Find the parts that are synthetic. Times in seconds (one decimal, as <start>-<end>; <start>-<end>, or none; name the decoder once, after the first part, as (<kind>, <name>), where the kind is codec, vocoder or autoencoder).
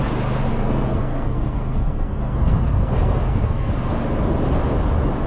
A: 0.5-3.7 (codec, SNAC)